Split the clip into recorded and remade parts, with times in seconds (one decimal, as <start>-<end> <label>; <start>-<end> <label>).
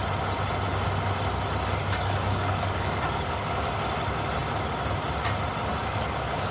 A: 0.0-1.8 recorded; 1.8-3.7 remade; 3.7-5.8 recorded; 5.8-6.5 remade